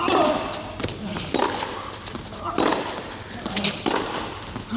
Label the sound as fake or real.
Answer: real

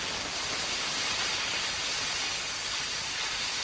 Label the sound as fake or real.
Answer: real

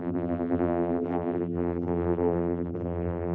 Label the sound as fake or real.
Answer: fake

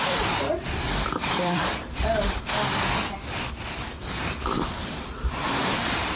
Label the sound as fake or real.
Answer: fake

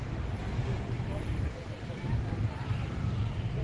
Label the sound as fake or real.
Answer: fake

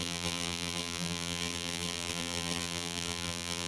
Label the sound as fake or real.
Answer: fake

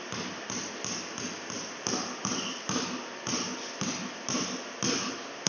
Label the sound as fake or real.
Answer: real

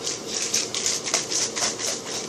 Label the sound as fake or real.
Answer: fake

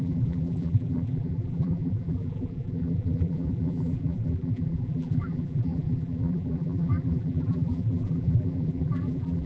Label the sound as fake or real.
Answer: fake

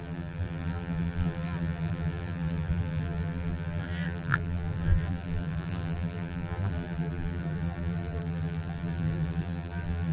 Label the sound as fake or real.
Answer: fake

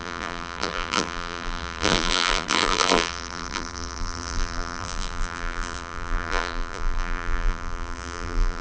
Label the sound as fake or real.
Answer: fake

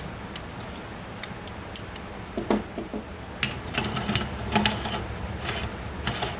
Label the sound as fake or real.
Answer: real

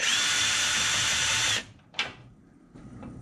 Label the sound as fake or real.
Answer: fake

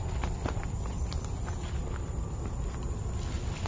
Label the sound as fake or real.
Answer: real